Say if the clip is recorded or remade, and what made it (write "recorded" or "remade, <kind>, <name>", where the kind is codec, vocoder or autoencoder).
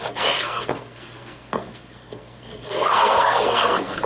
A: remade, codec, SNAC